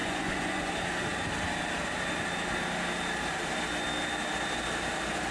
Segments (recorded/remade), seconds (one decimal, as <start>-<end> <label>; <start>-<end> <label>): 0.0-0.7 remade; 0.7-5.3 recorded